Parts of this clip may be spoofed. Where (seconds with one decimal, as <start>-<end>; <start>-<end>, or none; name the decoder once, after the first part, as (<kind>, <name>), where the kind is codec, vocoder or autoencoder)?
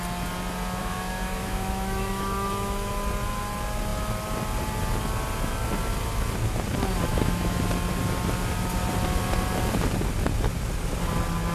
0.8-2.9 (autoencoder, DAC-VAE); 7.1-7.6